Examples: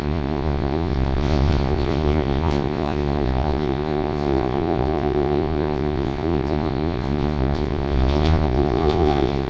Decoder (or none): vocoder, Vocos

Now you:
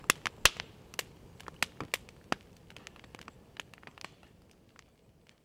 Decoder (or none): none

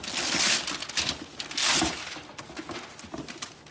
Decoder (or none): none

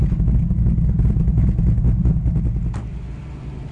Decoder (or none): none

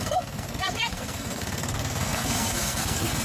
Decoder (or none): codec, SNAC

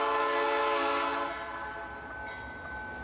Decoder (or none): none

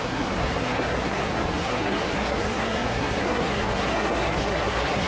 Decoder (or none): codec, SNAC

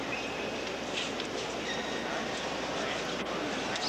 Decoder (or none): none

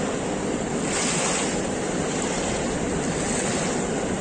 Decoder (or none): none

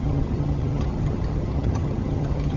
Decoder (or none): vocoder, HiFi-GAN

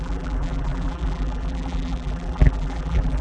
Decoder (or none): vocoder, BigVGAN v2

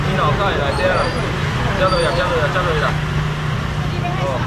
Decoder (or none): none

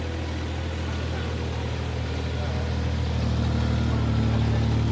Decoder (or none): none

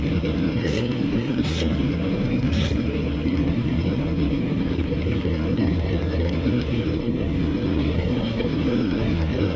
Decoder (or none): codec, SNAC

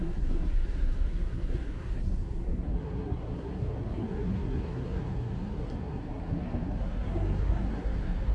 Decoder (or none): codec, SNAC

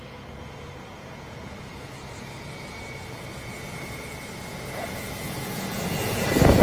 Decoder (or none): vocoder, Vocos